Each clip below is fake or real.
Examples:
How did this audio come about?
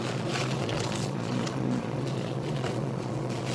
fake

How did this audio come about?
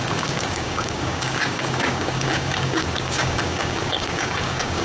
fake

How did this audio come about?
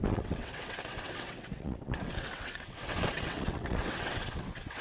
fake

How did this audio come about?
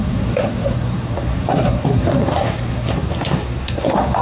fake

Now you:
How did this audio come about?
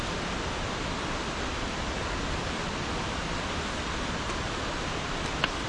real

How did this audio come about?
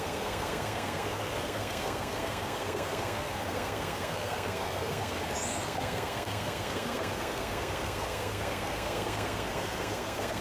fake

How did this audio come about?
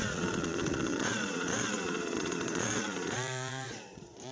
fake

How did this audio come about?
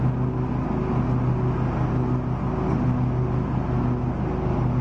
real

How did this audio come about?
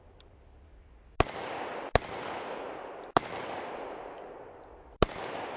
real